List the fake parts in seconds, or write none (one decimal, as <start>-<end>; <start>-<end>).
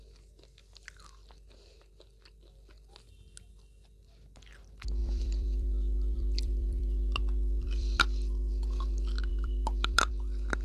5.0-8.0; 9.3-10.1